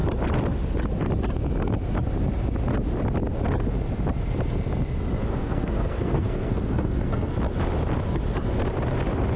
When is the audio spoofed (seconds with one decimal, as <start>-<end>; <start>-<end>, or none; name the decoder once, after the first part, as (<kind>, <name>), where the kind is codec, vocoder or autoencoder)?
5.3-7.3 (codec, SNAC)